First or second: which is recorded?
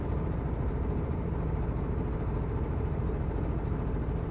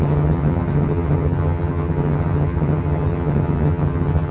first